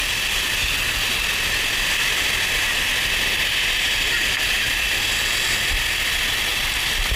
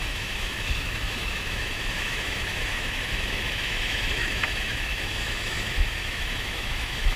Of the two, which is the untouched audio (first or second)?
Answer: first